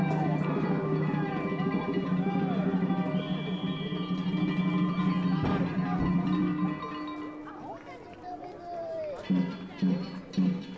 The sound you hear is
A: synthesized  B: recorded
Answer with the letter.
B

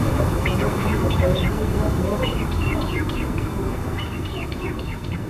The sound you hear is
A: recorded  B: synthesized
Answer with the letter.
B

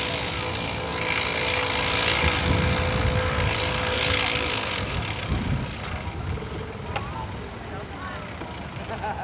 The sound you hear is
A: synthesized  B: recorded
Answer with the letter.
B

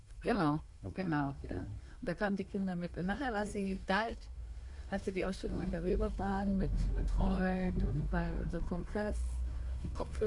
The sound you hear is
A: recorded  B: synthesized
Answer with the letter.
B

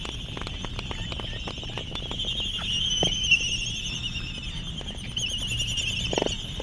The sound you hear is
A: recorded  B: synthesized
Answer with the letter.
A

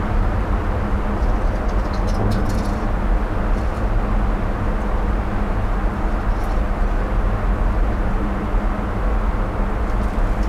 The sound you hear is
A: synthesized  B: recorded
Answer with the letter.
B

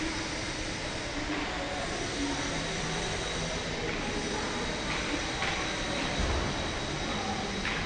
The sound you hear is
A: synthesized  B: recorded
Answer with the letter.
B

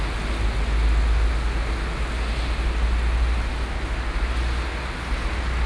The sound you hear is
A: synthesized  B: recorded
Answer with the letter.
B